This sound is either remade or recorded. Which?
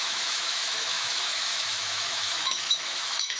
remade